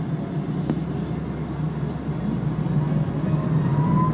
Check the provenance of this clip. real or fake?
real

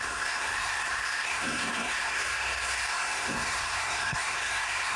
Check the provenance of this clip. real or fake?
fake